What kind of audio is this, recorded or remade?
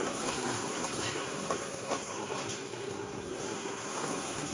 remade